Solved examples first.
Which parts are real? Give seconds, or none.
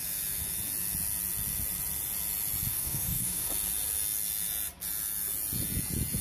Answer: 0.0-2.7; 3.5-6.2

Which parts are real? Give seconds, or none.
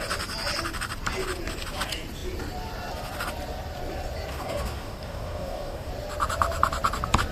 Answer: 0.0-4.3; 5.9-7.3